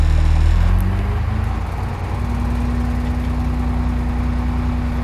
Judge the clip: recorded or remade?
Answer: recorded